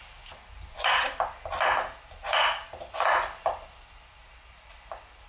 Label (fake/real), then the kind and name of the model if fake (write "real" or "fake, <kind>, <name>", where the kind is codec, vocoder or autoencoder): real